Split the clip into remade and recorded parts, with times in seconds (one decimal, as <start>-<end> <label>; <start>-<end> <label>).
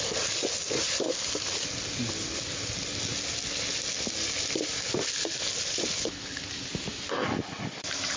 0.0-8.2 recorded